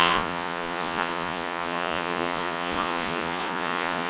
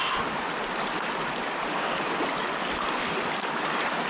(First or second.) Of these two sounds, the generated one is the first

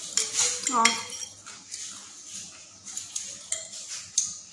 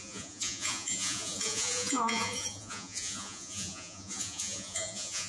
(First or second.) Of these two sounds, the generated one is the second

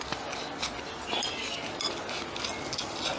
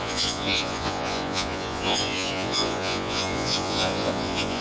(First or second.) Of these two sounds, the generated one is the second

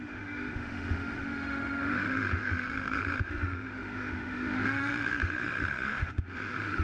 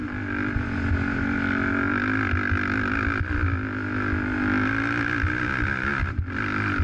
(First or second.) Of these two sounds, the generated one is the first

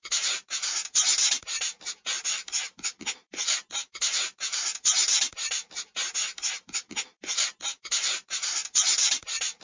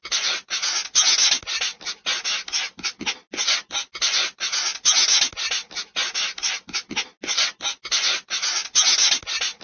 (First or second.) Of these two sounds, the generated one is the first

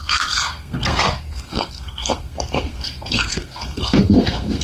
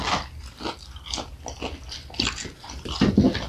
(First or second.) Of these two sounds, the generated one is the first